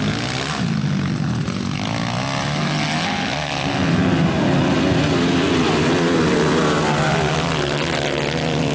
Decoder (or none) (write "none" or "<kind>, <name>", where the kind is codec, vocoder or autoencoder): none